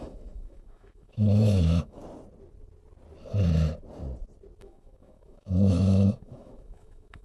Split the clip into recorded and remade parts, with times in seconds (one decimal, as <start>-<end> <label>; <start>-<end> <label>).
0.0-2.0 remade; 2.0-4.6 recorded; 4.6-7.2 remade